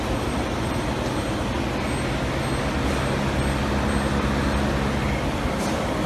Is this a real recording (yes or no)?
yes